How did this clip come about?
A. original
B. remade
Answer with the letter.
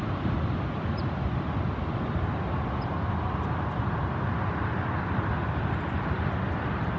A